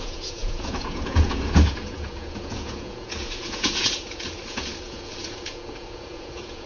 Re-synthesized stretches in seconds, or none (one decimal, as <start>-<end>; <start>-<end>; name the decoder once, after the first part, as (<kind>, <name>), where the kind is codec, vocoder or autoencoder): 0.0-6.7 (vocoder, Vocos)